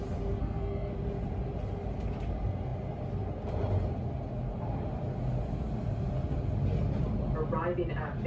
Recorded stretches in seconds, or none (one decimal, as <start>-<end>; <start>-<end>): 0.0-0.4; 0.9-8.3